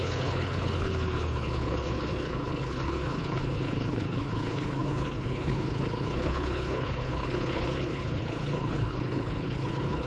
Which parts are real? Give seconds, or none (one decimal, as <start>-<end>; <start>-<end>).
none

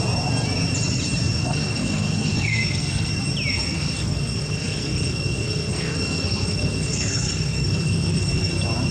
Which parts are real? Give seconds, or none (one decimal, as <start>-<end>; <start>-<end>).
0.0-1.4; 3.1-3.5; 8.5-8.9

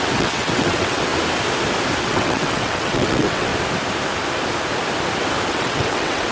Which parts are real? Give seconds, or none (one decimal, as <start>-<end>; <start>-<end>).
1.1-2.0; 3.5-5.5

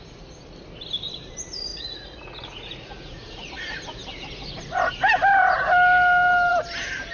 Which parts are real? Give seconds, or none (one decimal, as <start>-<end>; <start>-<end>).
0.0-1.7; 3.5-7.1

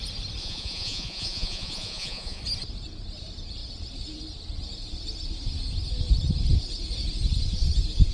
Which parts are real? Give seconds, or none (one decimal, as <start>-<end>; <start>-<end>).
0.0-0.4; 2.4-8.1

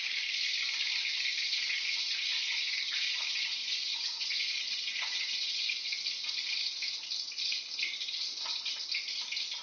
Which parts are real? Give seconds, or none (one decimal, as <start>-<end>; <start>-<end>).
0.0-2.3; 2.8-3.6; 5.8-9.6